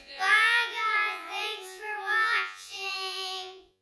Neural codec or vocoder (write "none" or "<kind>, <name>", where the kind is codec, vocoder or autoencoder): vocoder, Vocos